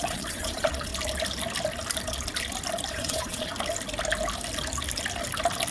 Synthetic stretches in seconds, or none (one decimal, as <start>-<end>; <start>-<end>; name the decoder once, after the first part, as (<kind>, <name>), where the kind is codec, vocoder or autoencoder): 0.0-0.9 (vocoder, Vocos); 2.9-3.5